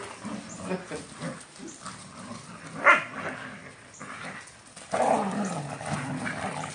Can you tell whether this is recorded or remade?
recorded